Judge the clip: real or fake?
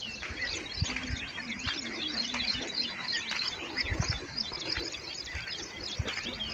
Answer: real